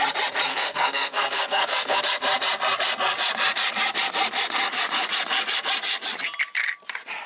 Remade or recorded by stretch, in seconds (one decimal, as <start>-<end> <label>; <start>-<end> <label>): 0.0-0.5 recorded; 0.5-2.0 remade; 2.0-7.3 recorded